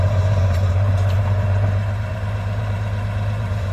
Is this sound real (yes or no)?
no